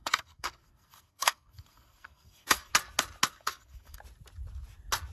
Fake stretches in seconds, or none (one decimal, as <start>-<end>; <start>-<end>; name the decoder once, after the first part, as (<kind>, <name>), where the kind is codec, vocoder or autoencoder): 0.0-2.7 (codec, SNAC); 3.3-4.0